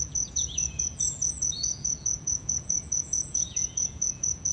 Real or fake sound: fake